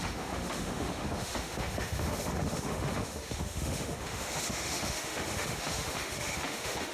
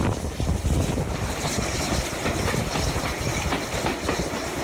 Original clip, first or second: second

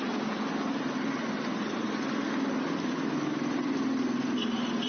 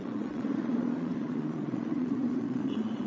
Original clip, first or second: first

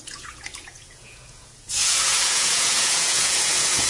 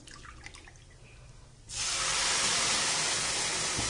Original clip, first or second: second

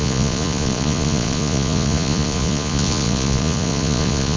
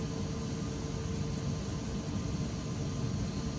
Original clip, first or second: second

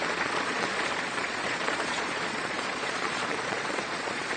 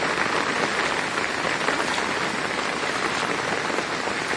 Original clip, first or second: second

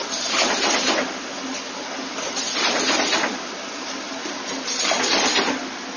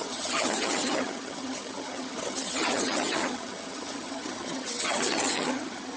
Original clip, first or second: first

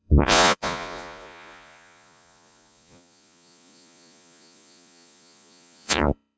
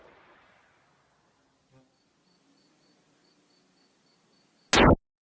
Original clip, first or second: second